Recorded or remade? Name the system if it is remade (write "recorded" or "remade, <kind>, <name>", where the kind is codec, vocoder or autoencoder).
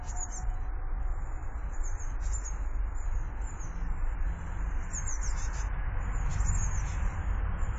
recorded